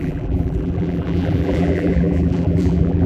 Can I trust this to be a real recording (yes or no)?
no